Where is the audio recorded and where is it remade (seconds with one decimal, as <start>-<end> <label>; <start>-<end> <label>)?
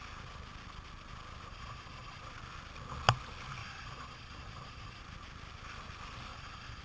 0.0-1.5 recorded; 1.5-2.2 remade; 2.2-3.6 recorded; 3.6-5.0 remade; 5.0-6.3 recorded; 6.3-6.8 remade